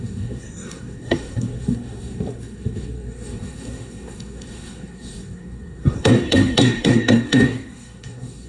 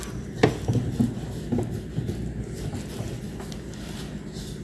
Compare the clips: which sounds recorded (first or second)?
second